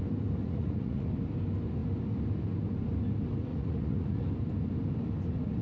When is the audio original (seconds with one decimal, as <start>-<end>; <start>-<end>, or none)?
0.0-0.4; 1.1-3.5; 4.3-5.6